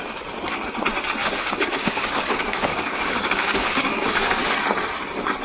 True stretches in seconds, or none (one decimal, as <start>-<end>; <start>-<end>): 0.0-1.2; 4.4-5.4